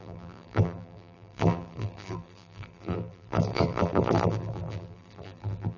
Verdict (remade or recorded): remade